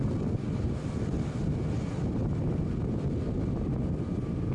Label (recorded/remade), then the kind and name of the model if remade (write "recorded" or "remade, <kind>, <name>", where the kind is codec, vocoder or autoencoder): recorded